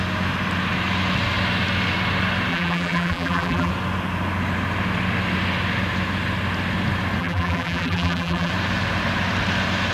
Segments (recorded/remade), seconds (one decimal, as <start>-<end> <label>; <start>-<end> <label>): 0.0-2.5 recorded; 2.5-3.7 remade; 3.7-7.2 recorded; 7.2-8.5 remade; 8.5-9.9 recorded